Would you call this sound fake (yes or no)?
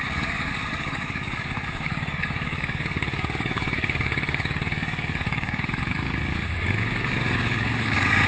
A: yes